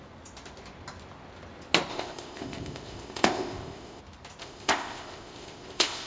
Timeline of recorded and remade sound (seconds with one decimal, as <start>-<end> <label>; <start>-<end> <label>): 0.0-1.9 recorded; 1.9-4.0 remade; 4.0-4.4 recorded; 4.4-6.1 remade